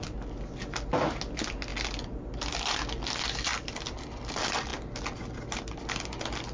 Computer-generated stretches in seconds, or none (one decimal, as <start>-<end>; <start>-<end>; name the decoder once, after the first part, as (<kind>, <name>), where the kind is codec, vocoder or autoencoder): none